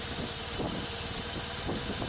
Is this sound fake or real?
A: real